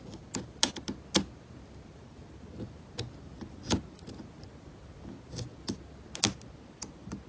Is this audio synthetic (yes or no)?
no